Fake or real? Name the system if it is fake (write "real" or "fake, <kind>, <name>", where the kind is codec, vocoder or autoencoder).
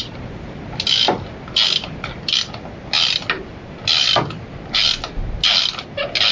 real